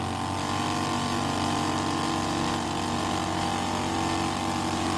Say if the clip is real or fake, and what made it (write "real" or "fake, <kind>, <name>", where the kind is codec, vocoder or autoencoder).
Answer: real